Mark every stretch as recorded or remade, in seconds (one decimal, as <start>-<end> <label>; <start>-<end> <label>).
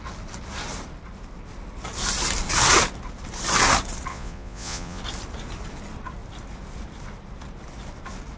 0.0-4.1 recorded; 4.1-5.0 remade; 5.0-8.4 recorded